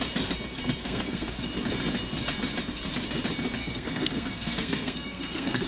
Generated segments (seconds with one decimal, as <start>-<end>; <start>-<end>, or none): 0.8-1.3; 3.6-5.7